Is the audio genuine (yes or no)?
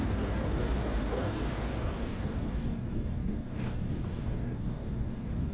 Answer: no